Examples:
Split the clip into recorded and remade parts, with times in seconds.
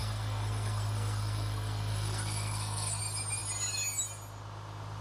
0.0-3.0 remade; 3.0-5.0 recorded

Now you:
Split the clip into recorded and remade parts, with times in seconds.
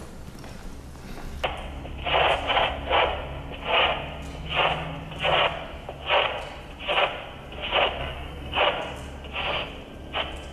0.0-8.0 recorded; 8.0-8.6 remade; 8.6-10.5 recorded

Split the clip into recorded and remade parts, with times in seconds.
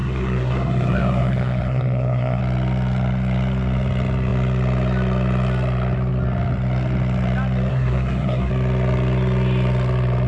0.0-2.4 remade; 2.4-7.7 recorded; 7.7-8.5 remade; 8.5-10.3 recorded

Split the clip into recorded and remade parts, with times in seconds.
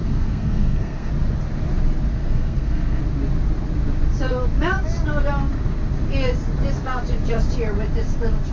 0.0-1.1 remade; 1.1-2.1 recorded; 2.1-3.0 remade; 3.0-8.5 recorded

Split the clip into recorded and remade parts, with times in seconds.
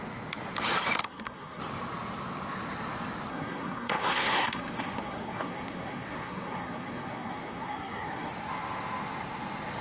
0.0-1.0 recorded; 1.0-1.6 remade; 1.6-3.3 recorded; 3.3-8.3 remade; 8.3-9.8 recorded